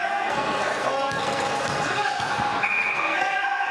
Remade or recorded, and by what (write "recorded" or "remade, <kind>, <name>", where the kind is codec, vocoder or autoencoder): remade, codec, SNAC